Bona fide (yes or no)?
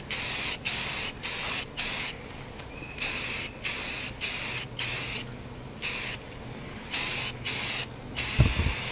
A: yes